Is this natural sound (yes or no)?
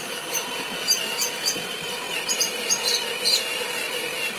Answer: yes